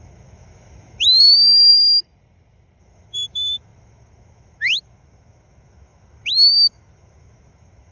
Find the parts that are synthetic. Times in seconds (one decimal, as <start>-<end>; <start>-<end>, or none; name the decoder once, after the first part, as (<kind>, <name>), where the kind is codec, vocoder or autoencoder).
0.0-1.7 (autoencoder, DAC-VAE); 2.8-7.9